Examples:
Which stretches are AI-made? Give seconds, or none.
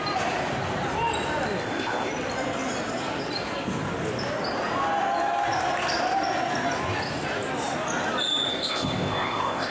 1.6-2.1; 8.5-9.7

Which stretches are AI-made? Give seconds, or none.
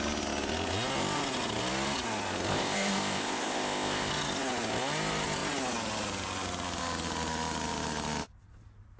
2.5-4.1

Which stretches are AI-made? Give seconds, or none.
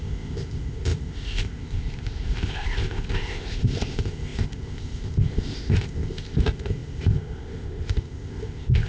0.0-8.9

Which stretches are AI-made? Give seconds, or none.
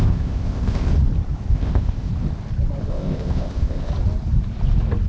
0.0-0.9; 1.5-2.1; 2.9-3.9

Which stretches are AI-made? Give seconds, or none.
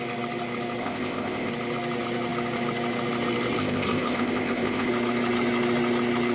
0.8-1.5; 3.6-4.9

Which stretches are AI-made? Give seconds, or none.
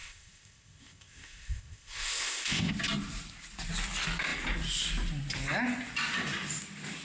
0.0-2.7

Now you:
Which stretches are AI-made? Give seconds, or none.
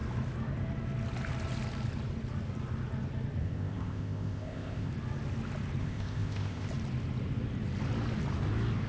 3.4-4.9; 5.8-6.7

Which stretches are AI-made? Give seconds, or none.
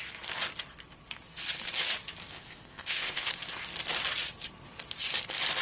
2.3-3.3